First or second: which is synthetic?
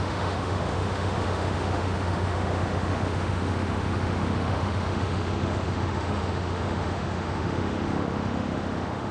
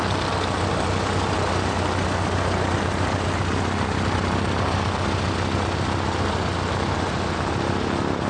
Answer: first